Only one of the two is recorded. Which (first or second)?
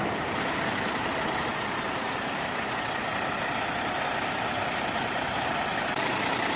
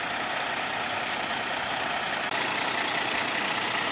second